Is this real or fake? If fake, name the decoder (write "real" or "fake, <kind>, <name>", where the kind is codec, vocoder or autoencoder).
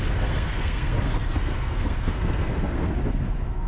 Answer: fake, codec, SNAC